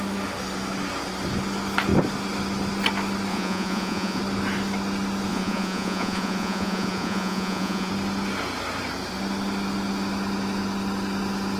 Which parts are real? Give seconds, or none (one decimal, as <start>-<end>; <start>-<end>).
0.0-3.3; 4.2-5.3; 7.9-11.6